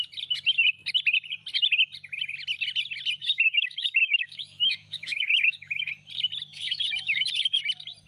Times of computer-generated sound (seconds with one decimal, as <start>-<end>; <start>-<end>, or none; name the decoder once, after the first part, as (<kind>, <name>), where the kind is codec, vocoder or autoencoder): 3.2-5.9 (autoencoder, DAC-VAE); 6.5-7.6